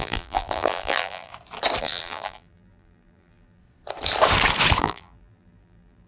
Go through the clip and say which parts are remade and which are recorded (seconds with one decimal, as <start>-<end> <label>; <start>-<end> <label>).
0.0-1.3 remade; 1.3-1.8 recorded; 1.8-3.6 remade; 3.6-4.8 recorded; 4.8-6.1 remade